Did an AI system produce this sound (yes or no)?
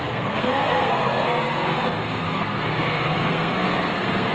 yes